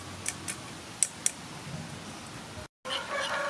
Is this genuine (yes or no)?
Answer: yes